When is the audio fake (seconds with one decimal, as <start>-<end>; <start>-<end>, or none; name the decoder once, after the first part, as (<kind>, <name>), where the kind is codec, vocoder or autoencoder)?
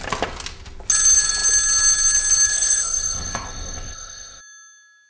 2.5-4.4 (codec, ZipCodec)